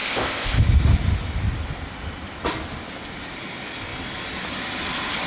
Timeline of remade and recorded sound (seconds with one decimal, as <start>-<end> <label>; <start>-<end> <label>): 0.0-0.6 remade; 0.6-5.3 recorded